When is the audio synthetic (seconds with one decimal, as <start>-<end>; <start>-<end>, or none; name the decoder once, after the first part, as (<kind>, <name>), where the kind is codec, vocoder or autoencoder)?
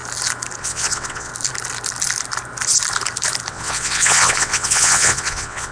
0.6-1.3 (vocoder, WaveNeXt); 3.5-5.7